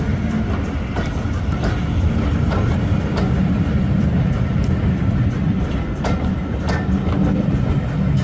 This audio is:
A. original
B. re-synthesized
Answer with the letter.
A